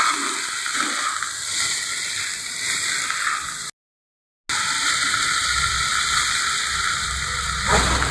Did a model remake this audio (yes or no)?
no